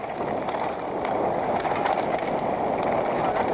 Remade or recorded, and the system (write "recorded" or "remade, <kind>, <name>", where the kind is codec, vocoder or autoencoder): recorded